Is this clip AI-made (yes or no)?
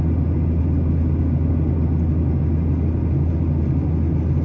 no